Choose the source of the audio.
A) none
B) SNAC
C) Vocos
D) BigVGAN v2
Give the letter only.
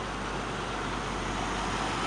A